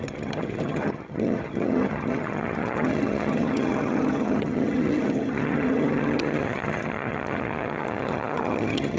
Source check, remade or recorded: remade